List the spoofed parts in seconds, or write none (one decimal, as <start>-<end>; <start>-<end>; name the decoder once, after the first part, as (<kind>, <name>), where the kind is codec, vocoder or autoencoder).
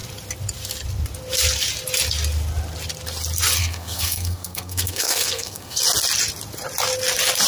3.6-5.8 (codec, SNAC)